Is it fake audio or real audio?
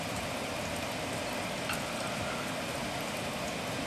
real